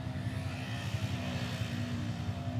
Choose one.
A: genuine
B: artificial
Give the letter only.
A